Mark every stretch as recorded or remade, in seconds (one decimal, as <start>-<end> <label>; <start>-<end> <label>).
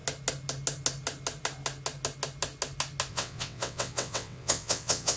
0.0-3.1 recorded; 3.1-5.2 remade